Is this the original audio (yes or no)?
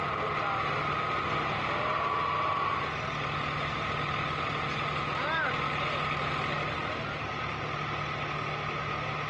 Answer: yes